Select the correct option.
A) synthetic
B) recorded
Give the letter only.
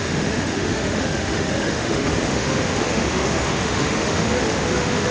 A